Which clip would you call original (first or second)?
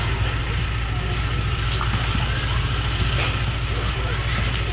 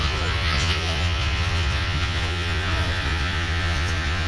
first